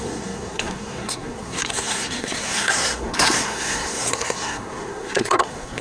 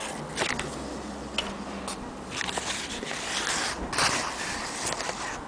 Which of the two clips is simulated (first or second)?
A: first